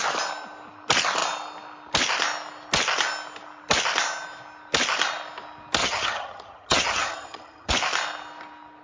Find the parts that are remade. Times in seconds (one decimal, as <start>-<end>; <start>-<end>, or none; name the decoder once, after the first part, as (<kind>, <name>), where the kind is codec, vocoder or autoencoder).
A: 5.8-7.7 (vocoder, HiFi-GAN)

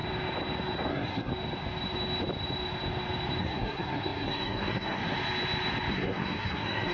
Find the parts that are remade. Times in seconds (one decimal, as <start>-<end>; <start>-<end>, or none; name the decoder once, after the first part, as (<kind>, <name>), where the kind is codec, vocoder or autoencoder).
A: 0.9-1.3 (codec, SNAC); 3.4-5.0; 5.9-6.9

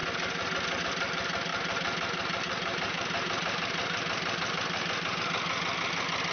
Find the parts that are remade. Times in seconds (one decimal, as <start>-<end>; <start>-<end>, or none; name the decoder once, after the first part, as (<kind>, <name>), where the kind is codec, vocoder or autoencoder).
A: 1.5-5.2 (vocoder, BigVGAN v2)

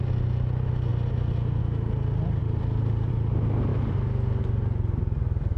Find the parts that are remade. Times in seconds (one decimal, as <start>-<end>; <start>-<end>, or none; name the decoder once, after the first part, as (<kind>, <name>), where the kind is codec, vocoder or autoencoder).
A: 0.9-1.6 (vocoder, BigVGAN v2); 3.7-4.4

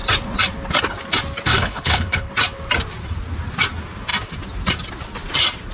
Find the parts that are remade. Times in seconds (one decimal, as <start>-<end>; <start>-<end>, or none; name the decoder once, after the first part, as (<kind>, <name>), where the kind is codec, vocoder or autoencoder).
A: 1.5-2.3 (codec, HILCodec)

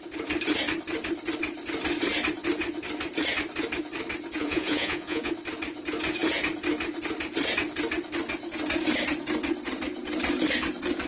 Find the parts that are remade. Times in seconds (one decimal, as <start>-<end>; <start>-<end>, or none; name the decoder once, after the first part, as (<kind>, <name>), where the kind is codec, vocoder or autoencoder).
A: 4.4-5.3 (vocoder, Vocos)